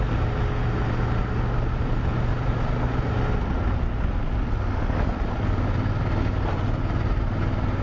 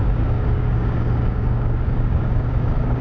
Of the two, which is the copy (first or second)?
second